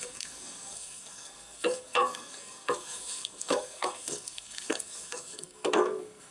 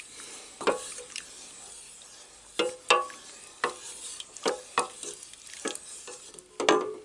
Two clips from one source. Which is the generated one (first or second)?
first